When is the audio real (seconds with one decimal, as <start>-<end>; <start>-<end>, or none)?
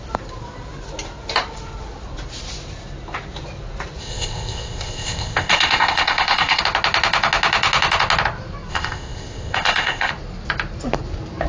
0.0-4.0; 6.6-8.7; 10.1-11.5